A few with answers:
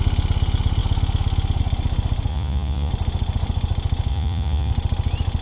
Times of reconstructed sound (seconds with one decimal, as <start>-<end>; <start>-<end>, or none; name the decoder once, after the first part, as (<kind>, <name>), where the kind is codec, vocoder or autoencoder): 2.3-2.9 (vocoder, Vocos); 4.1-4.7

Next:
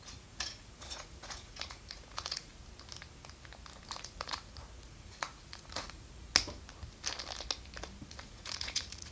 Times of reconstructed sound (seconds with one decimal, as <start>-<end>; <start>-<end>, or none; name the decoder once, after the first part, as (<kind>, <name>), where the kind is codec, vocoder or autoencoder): 0.0-2.5 (vocoder, Vocos); 4.0-6.3; 8.0-9.1

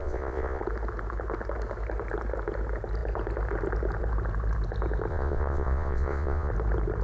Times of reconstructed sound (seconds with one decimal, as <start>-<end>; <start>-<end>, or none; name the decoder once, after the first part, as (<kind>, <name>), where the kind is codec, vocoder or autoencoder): 0.0-0.6 (vocoder, Vocos); 5.1-6.5

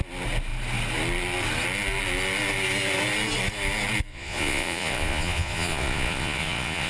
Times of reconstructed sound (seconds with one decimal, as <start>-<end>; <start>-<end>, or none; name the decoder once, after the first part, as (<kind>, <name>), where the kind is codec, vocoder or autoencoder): 4.1-6.9 (vocoder, Vocos)

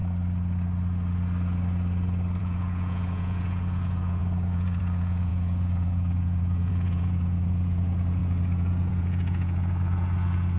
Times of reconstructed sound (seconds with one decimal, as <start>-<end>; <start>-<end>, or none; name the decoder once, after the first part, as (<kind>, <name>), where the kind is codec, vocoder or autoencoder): 2.4-10.6 (vocoder, Vocos)